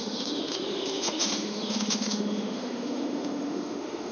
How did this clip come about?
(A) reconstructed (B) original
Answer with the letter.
A